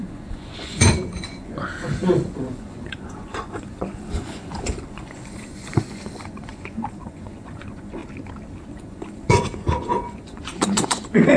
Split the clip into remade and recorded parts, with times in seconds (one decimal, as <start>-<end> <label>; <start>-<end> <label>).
0.0-8.0 remade; 8.0-8.7 recorded; 8.7-11.4 remade